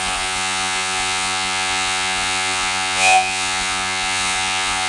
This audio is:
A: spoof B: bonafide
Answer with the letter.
A